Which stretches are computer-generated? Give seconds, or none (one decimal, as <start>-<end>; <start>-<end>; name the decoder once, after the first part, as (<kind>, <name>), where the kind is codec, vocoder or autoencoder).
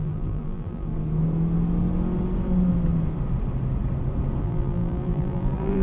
0.0-0.9 (vocoder, BigVGAN v2); 4.4-5.8